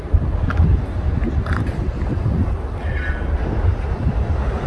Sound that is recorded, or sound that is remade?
recorded